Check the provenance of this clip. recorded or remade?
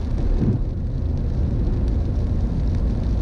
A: recorded